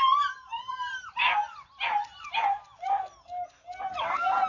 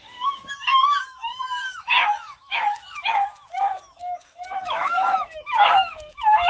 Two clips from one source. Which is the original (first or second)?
first